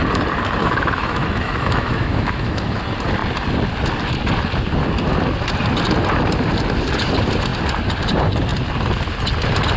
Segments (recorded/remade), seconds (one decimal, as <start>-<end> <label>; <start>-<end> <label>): 0.0-0.6 recorded; 0.6-2.8 remade; 2.8-9.8 recorded